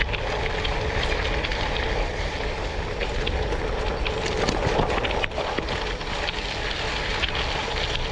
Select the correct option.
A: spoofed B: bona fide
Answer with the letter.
B